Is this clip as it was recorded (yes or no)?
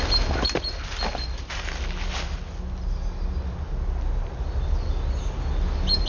yes